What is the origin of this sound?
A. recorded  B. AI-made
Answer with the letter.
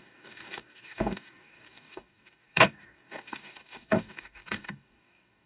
B